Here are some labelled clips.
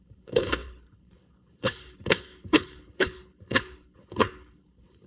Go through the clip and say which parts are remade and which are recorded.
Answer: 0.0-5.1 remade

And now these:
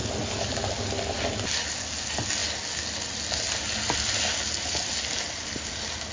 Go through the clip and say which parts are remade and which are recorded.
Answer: 0.0-6.1 recorded

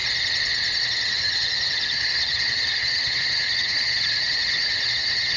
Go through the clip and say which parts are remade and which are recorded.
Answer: 0.0-0.8 recorded; 0.8-5.4 remade

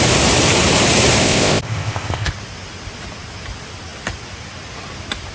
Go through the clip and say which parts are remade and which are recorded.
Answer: 0.0-1.2 recorded; 1.2-2.3 remade; 2.3-5.3 recorded

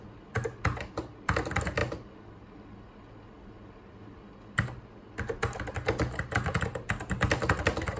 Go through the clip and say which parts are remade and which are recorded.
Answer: 0.0-8.0 recorded